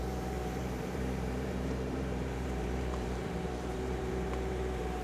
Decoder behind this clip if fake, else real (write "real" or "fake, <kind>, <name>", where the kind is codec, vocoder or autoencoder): fake, vocoder, BigVGAN v2